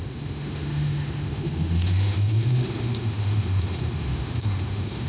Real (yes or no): no